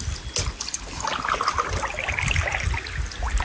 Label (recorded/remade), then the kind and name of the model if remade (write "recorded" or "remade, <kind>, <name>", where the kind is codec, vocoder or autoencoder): recorded